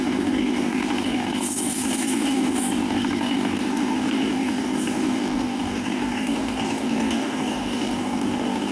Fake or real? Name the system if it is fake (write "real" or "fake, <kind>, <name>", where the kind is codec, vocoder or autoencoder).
fake, codec, DAC